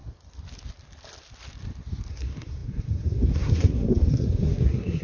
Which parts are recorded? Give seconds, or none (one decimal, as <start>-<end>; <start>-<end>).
0.0-2.1